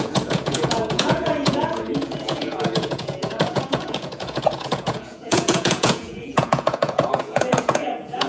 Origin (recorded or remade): remade